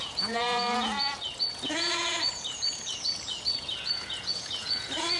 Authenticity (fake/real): fake